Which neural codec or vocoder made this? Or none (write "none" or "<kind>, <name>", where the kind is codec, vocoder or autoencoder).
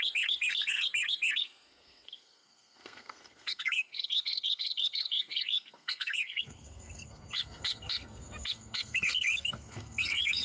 codec, SNAC